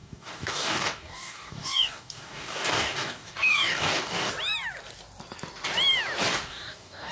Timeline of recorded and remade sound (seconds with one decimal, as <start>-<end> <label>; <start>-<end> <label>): 0.0-4.3 remade; 4.3-6.3 recorded; 6.3-7.1 remade